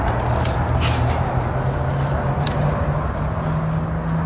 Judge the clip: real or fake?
real